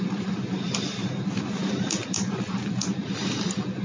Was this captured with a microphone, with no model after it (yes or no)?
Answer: yes